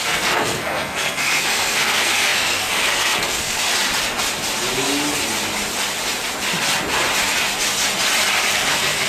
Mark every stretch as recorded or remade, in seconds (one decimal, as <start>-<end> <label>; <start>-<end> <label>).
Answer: 0.0-3.7 remade; 3.7-8.5 recorded; 8.5-9.1 remade